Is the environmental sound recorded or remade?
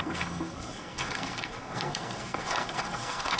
remade